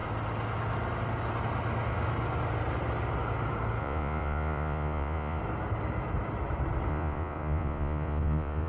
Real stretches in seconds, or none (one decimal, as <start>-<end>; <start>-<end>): 0.0-3.8; 5.4-6.9